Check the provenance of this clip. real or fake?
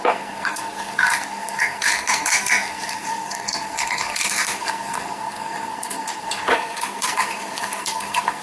fake